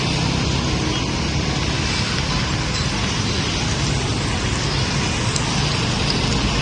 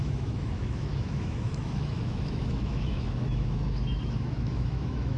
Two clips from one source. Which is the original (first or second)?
first